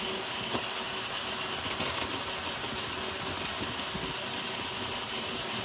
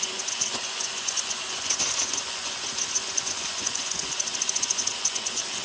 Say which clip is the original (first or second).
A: first